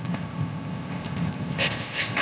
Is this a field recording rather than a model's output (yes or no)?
no